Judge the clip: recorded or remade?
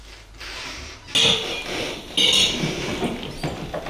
recorded